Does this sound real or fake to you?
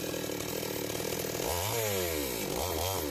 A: real